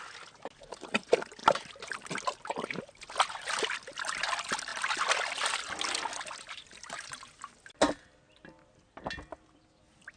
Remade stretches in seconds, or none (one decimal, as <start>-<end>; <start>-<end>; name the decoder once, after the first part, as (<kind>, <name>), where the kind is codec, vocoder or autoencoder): none